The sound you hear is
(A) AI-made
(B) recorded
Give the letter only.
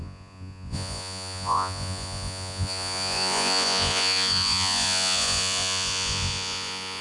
A